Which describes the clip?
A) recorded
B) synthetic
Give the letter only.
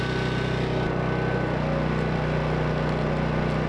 A